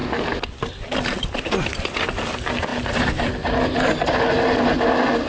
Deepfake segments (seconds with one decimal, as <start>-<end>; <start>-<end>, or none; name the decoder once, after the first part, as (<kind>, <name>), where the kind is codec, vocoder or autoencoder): none